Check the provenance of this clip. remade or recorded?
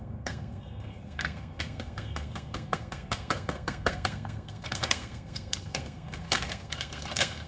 remade